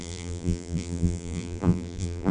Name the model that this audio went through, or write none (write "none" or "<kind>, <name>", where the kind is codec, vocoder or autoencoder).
vocoder, BigVGAN v2